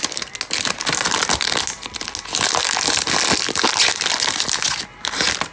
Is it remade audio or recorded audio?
recorded